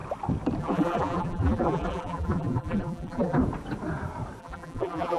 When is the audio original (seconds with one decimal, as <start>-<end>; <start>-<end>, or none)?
0.0-0.6; 3.4-4.4